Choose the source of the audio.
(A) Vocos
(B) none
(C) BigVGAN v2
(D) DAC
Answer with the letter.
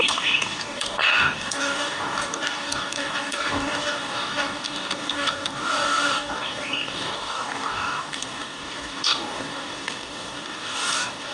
D